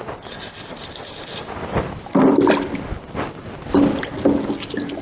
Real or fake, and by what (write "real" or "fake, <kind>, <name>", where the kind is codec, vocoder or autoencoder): real